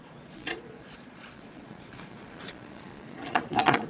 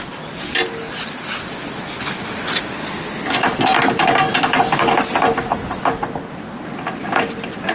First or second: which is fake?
first